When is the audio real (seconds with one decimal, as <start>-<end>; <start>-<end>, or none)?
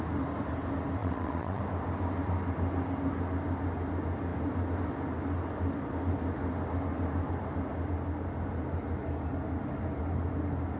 0.0-1.0; 1.6-10.8